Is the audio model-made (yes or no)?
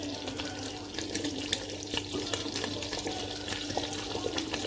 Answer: no